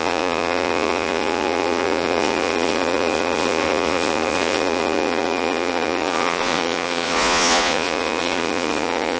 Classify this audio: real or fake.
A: fake